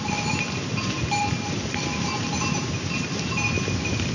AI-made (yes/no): no